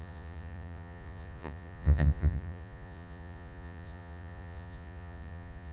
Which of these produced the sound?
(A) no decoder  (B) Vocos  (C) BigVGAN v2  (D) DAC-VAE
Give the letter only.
B